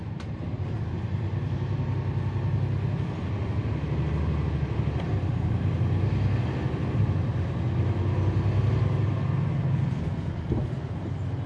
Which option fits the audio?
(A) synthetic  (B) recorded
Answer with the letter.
B